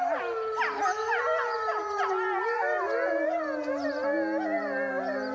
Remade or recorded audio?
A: recorded